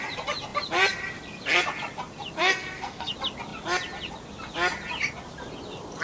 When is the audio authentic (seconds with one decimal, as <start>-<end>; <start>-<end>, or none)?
0.0-2.4; 3.1-6.0